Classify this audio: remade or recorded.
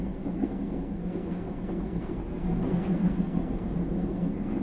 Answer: remade